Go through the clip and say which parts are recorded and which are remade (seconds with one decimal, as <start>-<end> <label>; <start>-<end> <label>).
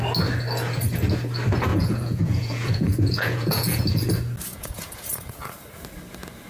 0.0-1.7 recorded; 1.7-3.8 remade; 3.8-4.5 recorded; 4.5-5.5 remade; 5.5-6.5 recorded